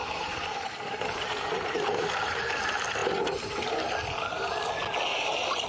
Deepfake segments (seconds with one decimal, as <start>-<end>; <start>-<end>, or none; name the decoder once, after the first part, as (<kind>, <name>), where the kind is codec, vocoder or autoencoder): 0.0-2.5 (vocoder, BigVGAN v2)